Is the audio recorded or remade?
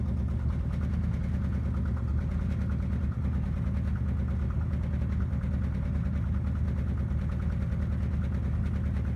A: recorded